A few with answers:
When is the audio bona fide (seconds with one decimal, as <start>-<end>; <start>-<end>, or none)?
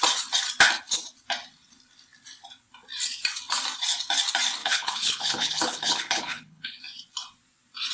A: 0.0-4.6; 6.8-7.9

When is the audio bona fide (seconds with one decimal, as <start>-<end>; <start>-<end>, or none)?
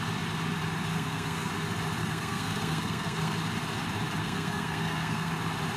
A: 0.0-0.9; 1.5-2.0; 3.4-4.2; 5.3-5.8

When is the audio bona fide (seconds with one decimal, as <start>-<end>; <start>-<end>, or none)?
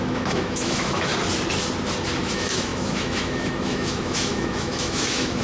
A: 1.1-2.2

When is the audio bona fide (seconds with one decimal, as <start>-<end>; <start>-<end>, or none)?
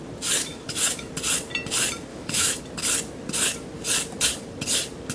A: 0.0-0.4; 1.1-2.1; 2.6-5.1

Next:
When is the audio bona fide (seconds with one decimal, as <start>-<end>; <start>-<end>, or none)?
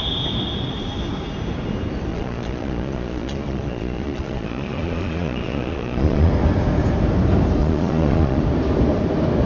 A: 0.0-2.1; 6.3-7.6; 8.4-9.5